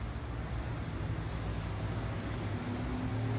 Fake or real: real